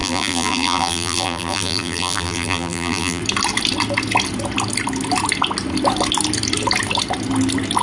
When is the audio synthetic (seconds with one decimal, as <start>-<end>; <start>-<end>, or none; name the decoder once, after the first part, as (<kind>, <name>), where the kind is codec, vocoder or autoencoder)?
0.0-3.2 (vocoder, BigVGAN v2)